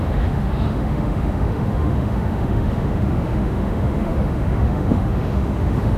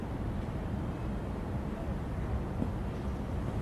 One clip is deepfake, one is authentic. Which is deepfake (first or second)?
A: first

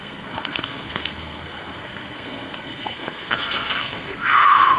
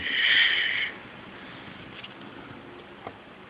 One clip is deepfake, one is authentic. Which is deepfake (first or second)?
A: first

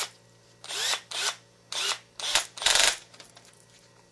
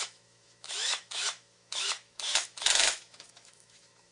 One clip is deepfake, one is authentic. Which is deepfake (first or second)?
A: second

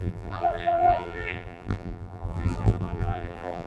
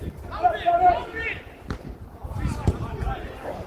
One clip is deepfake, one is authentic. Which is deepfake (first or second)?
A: first